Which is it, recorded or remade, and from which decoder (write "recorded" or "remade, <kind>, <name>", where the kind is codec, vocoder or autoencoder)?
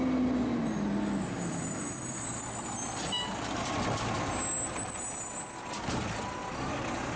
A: recorded